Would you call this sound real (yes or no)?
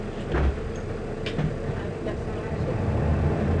yes